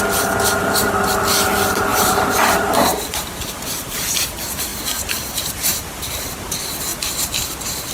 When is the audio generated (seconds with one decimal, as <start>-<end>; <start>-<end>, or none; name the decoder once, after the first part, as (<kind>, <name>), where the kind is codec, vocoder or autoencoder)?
1.9-4.1 (vocoder, BigVGAN v2)

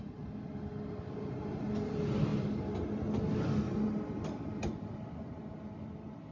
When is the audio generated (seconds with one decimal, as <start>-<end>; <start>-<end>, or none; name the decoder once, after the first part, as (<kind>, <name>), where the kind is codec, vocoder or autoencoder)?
none